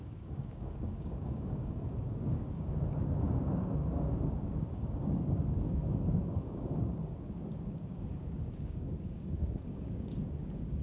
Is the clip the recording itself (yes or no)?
no